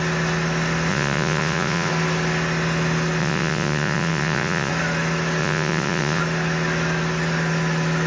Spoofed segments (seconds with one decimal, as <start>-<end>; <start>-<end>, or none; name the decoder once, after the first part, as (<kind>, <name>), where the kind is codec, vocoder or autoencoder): 0.9-1.9 (vocoder, Vocos); 3.2-4.7; 5.4-6.2